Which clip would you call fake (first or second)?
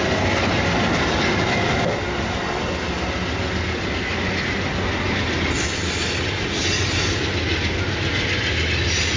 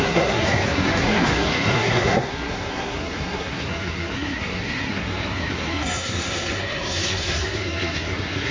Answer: second